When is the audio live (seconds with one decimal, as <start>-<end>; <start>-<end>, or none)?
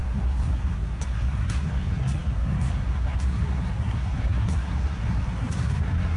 none